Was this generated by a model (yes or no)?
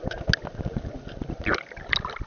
no